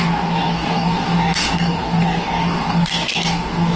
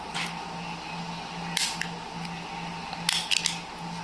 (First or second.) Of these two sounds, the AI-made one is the first